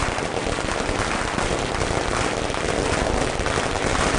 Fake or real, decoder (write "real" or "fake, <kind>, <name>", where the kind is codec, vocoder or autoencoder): real